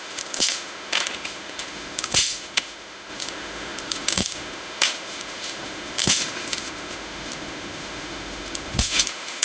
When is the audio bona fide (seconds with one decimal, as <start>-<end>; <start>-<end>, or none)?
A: none